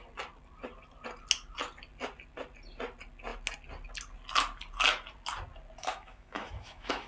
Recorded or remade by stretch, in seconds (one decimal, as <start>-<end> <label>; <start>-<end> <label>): 0.0-5.8 recorded; 5.8-7.1 remade